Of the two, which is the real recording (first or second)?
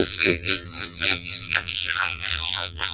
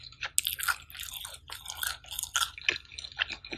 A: second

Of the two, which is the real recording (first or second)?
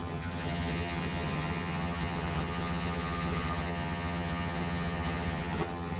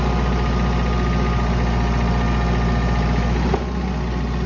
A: second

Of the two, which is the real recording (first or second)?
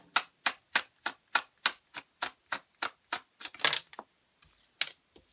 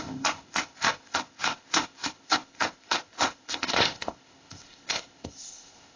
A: first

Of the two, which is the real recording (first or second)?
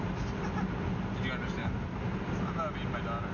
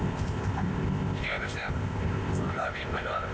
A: first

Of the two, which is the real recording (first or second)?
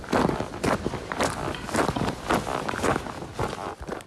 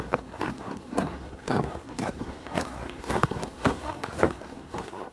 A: first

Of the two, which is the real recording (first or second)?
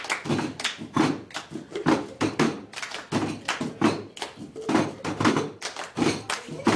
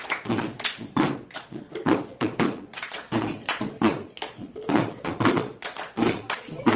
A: first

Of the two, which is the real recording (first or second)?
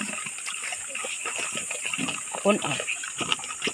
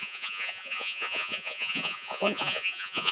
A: first